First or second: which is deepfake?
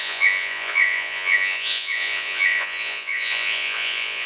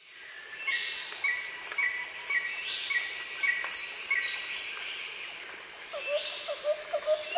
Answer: first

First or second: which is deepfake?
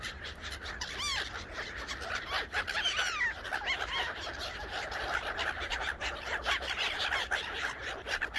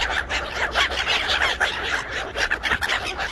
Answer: first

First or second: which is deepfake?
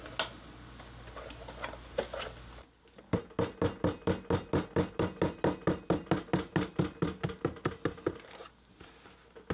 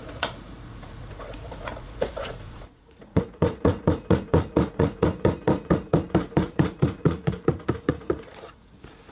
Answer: second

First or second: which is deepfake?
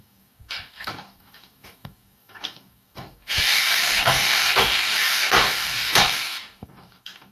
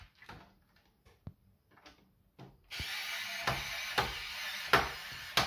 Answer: first